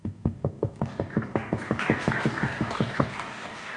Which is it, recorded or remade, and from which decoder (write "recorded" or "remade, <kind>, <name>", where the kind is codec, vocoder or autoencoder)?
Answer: remade, codec, DAC